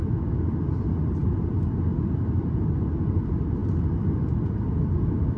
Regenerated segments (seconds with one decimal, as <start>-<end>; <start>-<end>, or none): 0.0-0.5